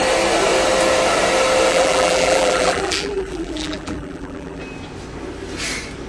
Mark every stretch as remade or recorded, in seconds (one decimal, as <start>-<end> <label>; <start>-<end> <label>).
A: 0.0-1.7 recorded; 1.7-4.6 remade; 4.6-6.1 recorded